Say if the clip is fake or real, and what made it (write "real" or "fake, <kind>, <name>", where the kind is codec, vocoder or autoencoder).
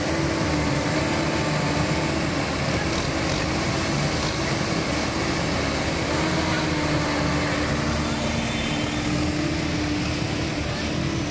real